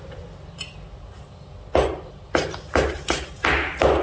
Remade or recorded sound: recorded